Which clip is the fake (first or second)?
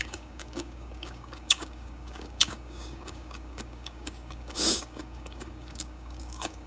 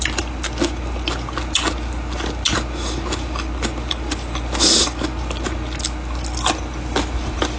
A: first